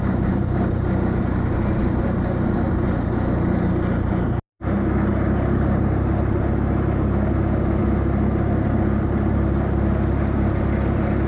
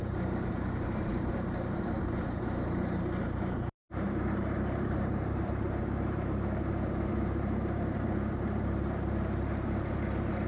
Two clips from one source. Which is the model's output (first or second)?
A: second